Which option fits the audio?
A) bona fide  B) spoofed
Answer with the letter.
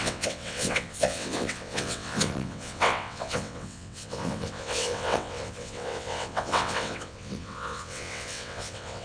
B